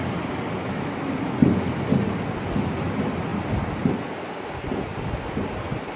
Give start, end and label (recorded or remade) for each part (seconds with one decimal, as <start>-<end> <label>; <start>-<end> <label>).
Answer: 0.0-0.6 recorded; 0.6-1.1 remade; 1.1-6.0 recorded